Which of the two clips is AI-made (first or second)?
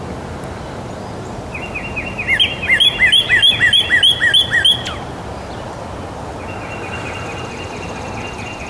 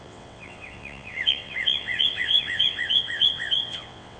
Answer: second